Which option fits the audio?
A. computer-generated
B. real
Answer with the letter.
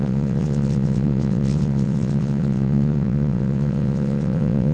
A